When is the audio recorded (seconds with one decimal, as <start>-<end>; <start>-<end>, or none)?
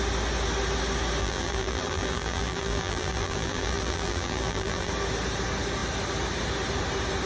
0.0-1.2; 4.9-7.3